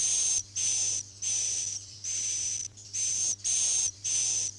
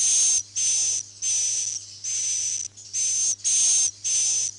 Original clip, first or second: second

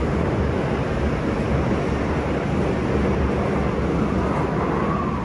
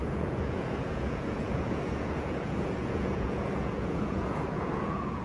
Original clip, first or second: first